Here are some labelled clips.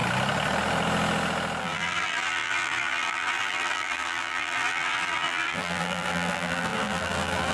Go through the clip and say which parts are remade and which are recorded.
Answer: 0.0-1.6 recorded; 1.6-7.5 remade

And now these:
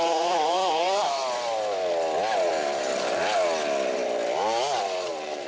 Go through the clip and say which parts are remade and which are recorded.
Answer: 0.0-1.2 remade; 1.2-2.5 recorded; 2.5-3.2 remade; 3.2-5.1 recorded; 5.1-5.5 remade

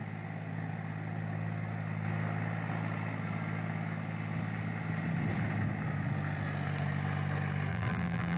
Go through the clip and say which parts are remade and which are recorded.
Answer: 0.0-7.7 recorded; 7.7-8.4 remade